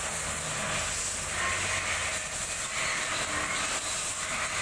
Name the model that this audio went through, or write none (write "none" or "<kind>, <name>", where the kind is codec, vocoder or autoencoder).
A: none